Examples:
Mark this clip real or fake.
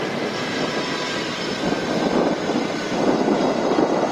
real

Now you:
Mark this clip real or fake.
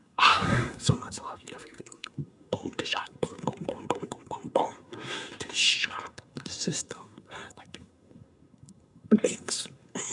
fake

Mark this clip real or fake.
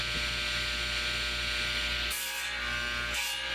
real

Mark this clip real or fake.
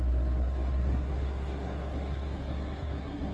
fake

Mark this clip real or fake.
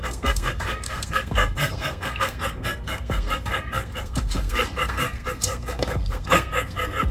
fake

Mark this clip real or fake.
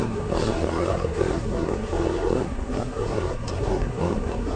fake